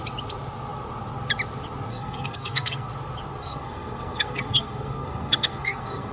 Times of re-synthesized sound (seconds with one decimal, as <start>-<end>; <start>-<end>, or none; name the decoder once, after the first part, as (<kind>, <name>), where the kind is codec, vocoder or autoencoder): 1.9-2.9 (codec, SNAC); 3.4-6.1